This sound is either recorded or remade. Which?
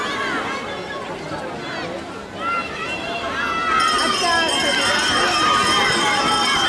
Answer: recorded